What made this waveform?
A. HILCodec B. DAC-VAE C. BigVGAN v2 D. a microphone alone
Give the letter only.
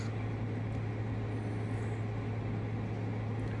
D